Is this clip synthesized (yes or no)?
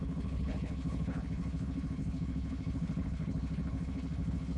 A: yes